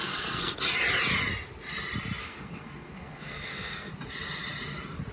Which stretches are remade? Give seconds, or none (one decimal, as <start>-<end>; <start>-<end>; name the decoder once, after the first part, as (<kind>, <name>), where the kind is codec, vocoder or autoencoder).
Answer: 0.0-0.5 (codec, SNAC); 2.2-3.9